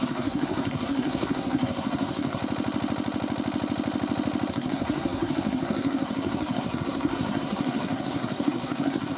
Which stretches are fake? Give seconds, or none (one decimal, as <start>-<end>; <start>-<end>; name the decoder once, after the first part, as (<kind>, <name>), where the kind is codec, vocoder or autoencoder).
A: 0.0-2.4 (codec, SNAC); 4.5-9.2